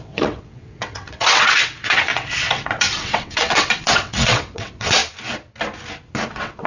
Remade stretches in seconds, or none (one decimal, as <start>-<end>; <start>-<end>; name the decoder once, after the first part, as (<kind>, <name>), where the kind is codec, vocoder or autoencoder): 0.0-5.0 (vocoder, WaveNeXt); 6.3-6.7